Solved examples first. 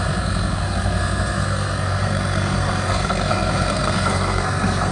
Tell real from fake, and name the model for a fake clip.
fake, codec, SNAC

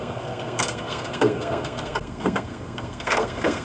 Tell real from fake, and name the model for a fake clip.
fake, codec, SNAC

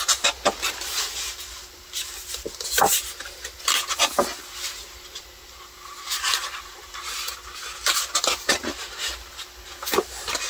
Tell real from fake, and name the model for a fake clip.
real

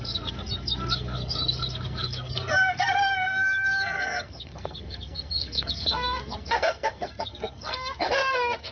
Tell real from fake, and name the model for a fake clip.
fake, codec, SNAC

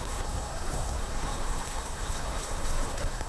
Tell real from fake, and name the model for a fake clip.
fake, codec, SNAC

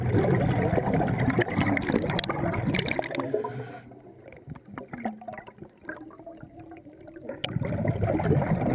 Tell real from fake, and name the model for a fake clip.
real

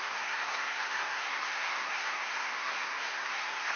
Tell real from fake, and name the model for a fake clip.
fake, codec, SNAC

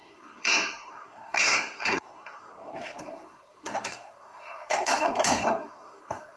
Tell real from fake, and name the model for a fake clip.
fake, codec, SNAC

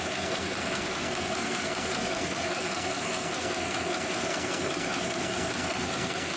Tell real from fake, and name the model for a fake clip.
fake, codec, SNAC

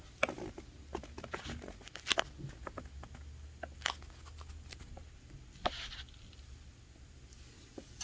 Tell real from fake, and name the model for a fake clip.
real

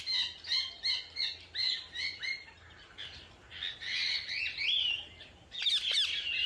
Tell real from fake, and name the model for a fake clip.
real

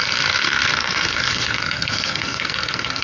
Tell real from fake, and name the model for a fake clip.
fake, codec, SNAC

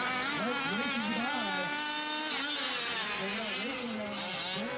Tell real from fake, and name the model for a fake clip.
real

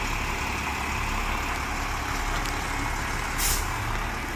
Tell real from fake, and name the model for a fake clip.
real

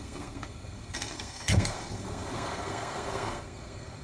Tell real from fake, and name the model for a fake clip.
fake, codec, SNAC